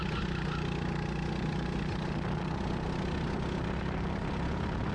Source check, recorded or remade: recorded